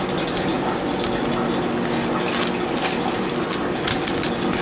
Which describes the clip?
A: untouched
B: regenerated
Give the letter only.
A